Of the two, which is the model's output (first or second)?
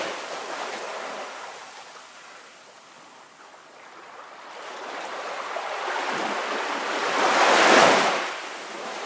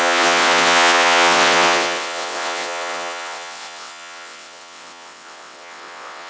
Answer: second